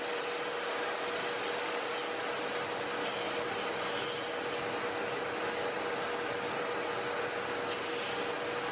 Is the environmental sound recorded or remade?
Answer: recorded